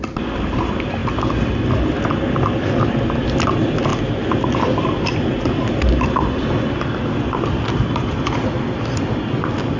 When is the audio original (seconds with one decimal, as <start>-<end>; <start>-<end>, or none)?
0.0-9.8